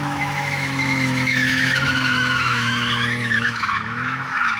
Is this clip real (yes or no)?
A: no